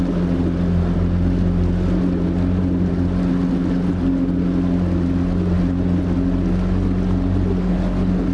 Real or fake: real